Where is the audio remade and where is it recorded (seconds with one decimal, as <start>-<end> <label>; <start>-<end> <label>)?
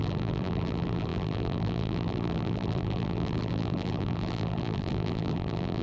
0.0-5.8 remade